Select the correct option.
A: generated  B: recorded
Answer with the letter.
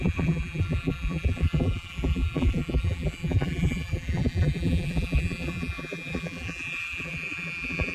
A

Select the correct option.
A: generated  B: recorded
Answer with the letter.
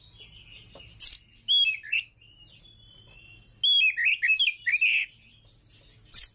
B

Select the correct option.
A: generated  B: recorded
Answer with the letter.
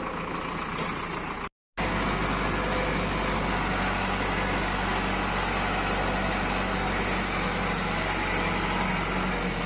B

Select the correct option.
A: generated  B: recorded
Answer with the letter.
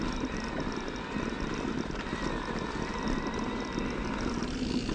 B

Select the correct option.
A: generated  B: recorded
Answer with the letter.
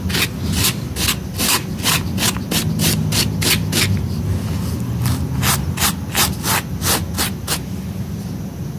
B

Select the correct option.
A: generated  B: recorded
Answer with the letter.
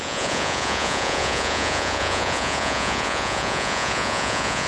A